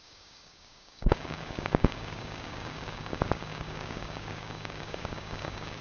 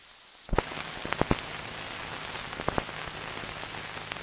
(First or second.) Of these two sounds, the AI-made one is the first